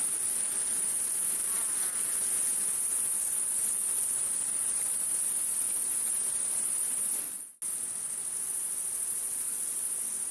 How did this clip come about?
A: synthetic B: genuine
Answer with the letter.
B